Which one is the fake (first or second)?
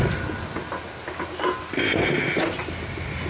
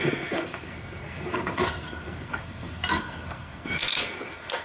second